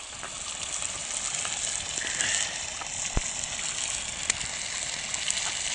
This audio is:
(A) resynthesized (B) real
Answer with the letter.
B